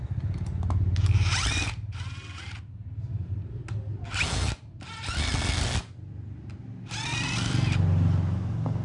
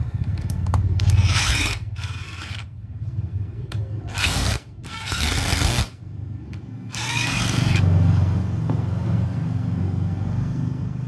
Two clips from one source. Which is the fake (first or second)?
second